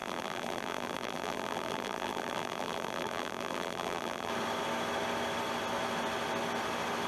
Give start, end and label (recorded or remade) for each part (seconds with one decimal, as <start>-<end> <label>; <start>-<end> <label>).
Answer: 0.0-4.3 remade; 4.3-7.1 recorded